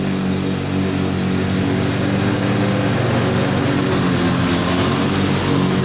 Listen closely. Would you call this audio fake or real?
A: real